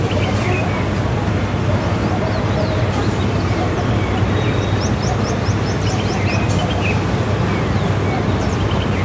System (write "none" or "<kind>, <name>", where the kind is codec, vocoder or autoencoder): none